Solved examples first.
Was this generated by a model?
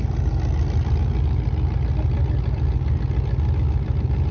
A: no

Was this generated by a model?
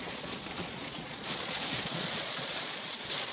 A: yes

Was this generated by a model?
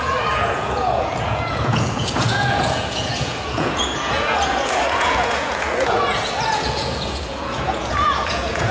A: yes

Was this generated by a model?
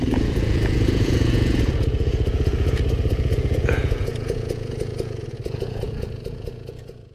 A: yes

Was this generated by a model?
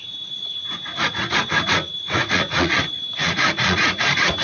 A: yes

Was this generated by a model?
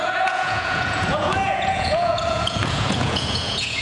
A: yes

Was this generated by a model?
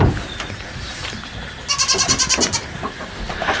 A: no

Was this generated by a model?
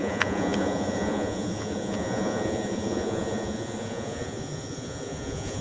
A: yes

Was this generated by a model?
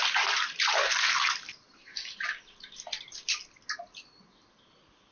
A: no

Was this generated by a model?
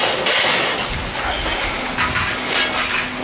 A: no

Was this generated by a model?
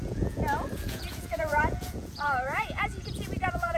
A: yes